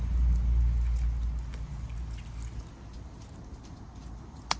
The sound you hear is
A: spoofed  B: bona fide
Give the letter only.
B